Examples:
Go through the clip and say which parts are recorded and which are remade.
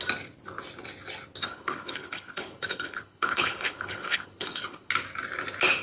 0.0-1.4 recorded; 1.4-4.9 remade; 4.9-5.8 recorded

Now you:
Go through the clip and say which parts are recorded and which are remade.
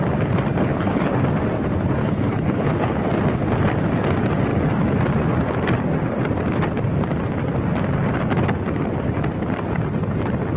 0.0-0.7 recorded; 0.7-1.2 remade; 1.2-2.0 recorded; 2.0-3.0 remade; 3.0-10.6 recorded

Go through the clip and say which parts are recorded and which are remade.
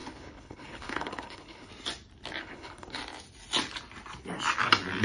0.0-1.7 remade; 1.7-2.4 recorded; 2.4-3.0 remade; 3.0-5.0 recorded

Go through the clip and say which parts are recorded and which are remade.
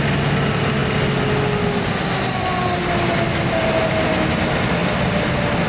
0.0-5.7 recorded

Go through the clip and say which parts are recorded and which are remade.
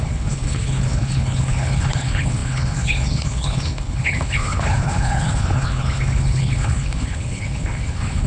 0.0-8.3 remade